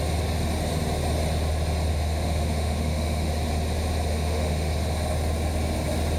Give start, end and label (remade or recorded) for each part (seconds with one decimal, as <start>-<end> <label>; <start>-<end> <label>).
0.0-1.9 recorded; 1.9-3.3 remade; 3.3-4.1 recorded; 4.1-4.7 remade; 4.7-6.2 recorded

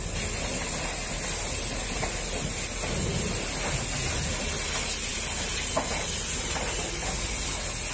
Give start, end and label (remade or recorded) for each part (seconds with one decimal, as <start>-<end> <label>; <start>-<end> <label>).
0.0-7.9 recorded

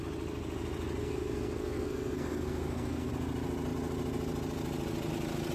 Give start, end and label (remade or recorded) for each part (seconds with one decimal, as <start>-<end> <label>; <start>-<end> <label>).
0.0-1.0 recorded; 1.0-3.1 remade; 3.1-5.5 recorded

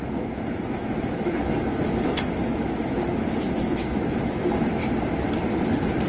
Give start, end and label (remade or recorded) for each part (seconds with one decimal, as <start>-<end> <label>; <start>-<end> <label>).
0.0-4.8 remade; 4.8-6.1 recorded

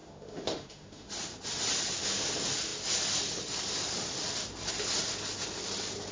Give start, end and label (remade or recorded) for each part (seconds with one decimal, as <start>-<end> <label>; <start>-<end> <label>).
0.0-1.1 remade; 1.1-6.1 recorded

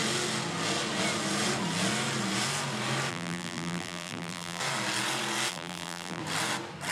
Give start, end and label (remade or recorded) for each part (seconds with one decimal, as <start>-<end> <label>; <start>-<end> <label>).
0.0-3.1 recorded; 3.1-4.6 remade; 4.6-5.5 recorded; 5.5-6.2 remade; 6.2-6.9 recorded

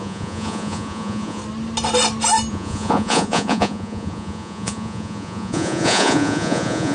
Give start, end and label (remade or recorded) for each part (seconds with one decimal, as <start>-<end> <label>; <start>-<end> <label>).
0.0-1.4 remade; 1.4-2.5 recorded; 2.5-6.9 remade

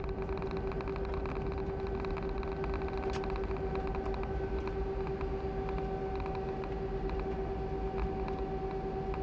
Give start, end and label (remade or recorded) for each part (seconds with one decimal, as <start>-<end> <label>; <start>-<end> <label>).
0.0-9.2 recorded